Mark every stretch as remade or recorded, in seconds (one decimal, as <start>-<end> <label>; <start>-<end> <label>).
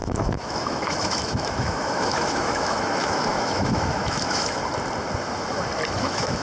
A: 0.0-4.6 remade; 4.6-6.0 recorded; 6.0-6.4 remade